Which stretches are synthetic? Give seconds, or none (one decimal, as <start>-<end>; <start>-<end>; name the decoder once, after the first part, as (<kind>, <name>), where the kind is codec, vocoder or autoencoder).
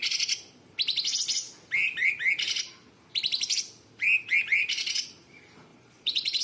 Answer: 5.7-6.4 (vocoder, Vocos)